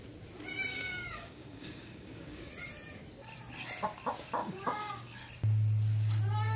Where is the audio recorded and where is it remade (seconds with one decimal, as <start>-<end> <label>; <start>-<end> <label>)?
0.0-0.7 recorded; 0.7-2.5 remade; 2.5-4.4 recorded; 4.4-5.2 remade; 5.2-6.6 recorded